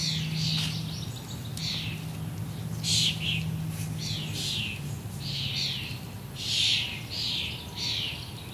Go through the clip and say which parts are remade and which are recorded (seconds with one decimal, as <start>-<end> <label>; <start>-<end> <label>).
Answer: 0.0-8.5 recorded